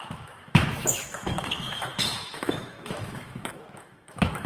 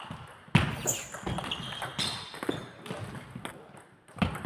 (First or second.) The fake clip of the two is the first